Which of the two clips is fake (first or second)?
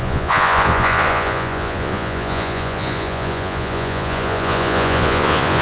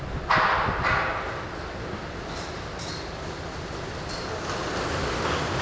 first